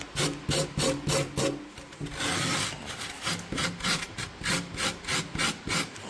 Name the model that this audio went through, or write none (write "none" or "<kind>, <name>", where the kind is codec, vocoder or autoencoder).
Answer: none